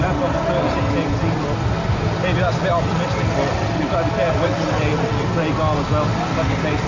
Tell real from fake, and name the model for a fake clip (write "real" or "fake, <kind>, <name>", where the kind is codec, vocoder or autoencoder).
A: real